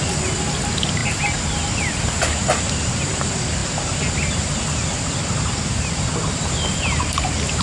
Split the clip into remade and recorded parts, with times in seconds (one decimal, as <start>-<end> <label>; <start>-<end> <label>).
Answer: 0.0-3.6 recorded; 3.6-4.5 remade; 4.5-7.6 recorded